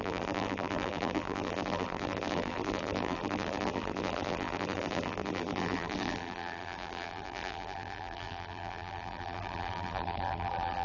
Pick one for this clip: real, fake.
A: fake